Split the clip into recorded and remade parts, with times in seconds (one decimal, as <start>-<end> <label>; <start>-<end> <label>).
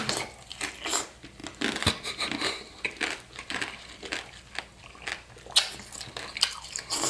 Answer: 0.0-7.1 recorded